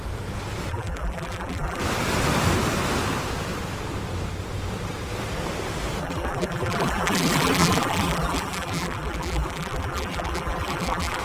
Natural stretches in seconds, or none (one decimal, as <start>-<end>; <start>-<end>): 0.0-0.7; 1.8-6.0